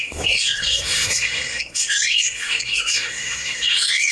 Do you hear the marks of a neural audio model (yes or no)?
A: yes